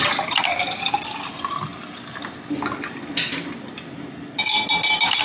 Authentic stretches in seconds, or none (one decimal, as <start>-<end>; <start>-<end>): 0.0-5.2

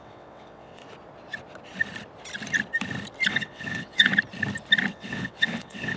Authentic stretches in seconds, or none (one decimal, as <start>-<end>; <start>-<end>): 0.8-3.3; 4.1-4.9

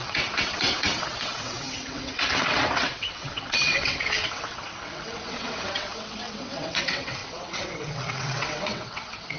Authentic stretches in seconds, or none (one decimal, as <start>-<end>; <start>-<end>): none